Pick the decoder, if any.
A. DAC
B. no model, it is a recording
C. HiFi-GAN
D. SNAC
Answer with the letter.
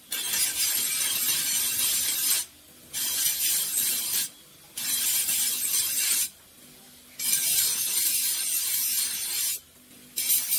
B